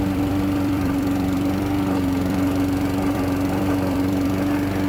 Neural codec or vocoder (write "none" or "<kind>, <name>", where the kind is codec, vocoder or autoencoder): vocoder, BigVGAN v2